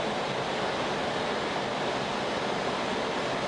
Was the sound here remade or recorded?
recorded